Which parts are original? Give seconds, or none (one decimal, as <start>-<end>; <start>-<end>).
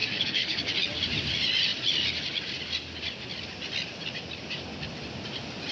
0.7-5.7